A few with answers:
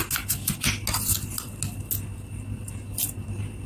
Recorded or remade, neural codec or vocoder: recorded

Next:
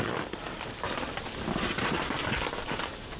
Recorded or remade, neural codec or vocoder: recorded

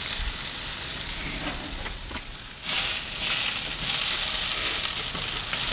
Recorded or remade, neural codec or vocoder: recorded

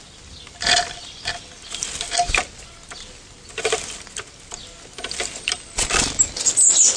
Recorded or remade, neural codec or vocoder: recorded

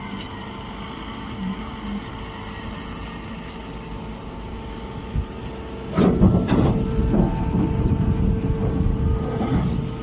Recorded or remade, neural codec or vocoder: recorded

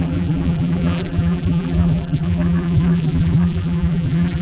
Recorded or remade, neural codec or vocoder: remade, vocoder, BigVGAN v2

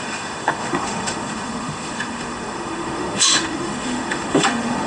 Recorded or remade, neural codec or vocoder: remade, autoencoder, DAC-VAE